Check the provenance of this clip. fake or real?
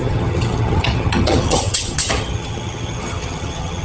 fake